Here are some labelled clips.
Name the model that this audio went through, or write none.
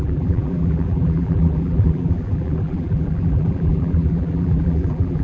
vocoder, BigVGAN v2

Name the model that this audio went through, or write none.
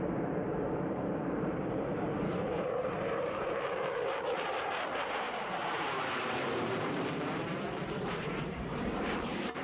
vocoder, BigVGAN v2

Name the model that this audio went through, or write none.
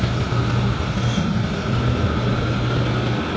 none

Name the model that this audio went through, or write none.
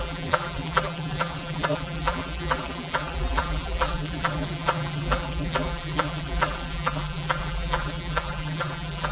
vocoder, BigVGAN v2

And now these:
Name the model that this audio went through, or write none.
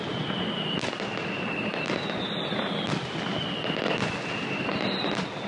none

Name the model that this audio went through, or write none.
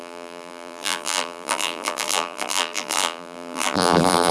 vocoder, BigVGAN v2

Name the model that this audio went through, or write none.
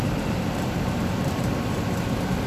vocoder, BigVGAN v2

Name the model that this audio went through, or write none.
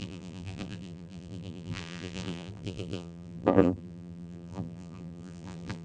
vocoder, BigVGAN v2